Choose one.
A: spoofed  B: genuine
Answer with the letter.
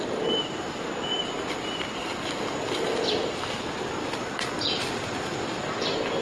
B